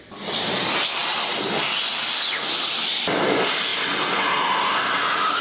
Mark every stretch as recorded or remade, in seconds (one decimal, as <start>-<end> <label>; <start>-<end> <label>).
0.0-5.4 recorded